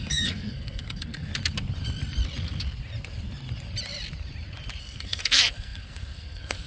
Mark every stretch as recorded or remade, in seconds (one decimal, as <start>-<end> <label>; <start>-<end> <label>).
0.0-1.3 remade; 1.3-4.8 recorded; 4.8-6.7 remade